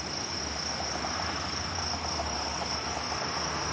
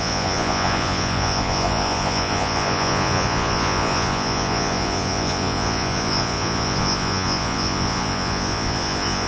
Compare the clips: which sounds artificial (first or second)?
second